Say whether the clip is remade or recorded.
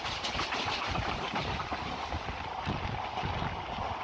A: recorded